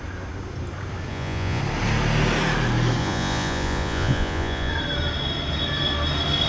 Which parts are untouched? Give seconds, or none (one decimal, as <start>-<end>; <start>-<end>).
0.0-1.1; 1.6-3.0; 4.7-6.5